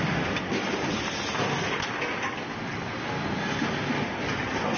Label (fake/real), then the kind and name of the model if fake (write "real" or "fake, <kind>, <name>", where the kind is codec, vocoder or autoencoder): real